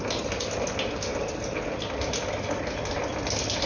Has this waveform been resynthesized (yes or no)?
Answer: no